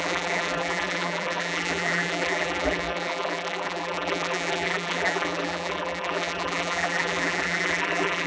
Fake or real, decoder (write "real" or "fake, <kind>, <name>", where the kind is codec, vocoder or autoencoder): fake, vocoder, BigVGAN v2